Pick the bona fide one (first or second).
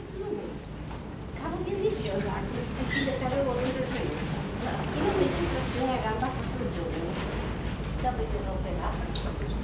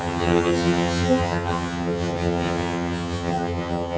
first